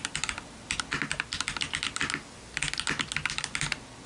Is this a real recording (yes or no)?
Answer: yes